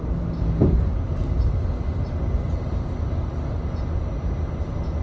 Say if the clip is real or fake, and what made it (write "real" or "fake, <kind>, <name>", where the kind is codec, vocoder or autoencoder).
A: real